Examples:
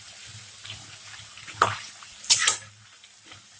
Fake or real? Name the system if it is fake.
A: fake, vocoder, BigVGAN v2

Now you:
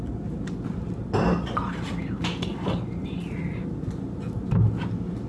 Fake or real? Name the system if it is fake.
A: real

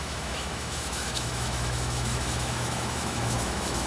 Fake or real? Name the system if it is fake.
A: fake, autoencoder, DAC-VAE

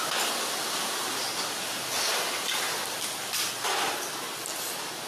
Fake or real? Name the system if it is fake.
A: real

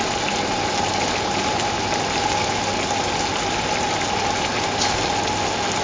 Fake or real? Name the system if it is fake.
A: real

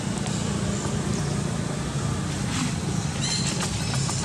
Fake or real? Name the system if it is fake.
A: real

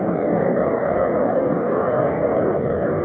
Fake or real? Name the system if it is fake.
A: fake, codec, DAC